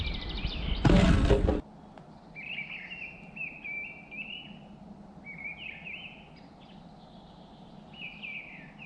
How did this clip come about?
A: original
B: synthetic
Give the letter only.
A